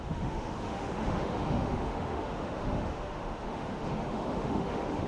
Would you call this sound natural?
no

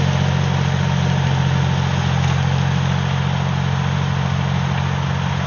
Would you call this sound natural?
yes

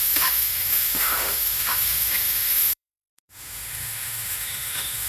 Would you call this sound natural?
no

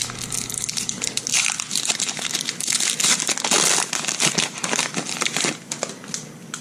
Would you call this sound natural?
yes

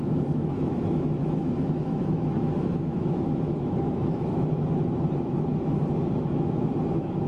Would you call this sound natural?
no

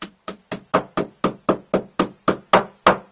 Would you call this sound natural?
yes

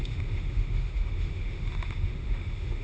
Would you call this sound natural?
no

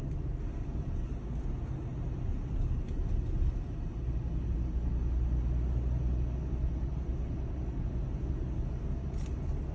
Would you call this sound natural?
yes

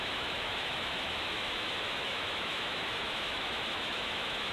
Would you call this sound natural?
no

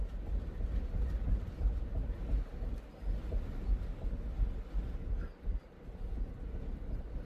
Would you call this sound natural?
yes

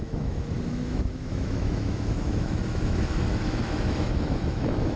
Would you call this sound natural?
no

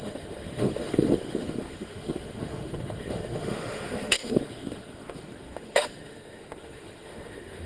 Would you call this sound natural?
no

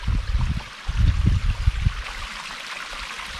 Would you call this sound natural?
yes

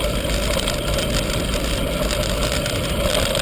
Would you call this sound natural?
yes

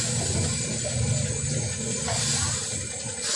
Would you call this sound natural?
yes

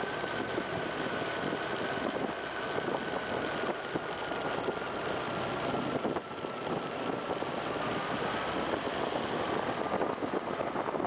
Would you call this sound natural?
yes